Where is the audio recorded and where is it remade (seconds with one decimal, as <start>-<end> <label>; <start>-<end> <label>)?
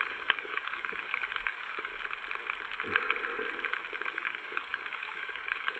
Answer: 0.0-1.9 remade; 1.9-4.1 recorded; 4.1-5.8 remade